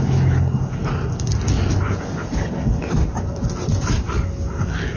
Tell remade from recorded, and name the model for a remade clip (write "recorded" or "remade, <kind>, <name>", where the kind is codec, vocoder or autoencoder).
recorded